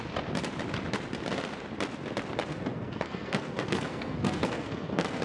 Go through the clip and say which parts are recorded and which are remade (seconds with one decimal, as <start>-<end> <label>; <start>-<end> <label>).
0.0-2.5 recorded; 2.5-5.2 remade